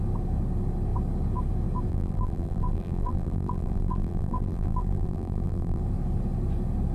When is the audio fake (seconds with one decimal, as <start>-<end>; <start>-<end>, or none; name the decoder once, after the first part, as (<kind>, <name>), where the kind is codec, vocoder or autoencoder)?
1.9-5.8 (vocoder, BigVGAN v2)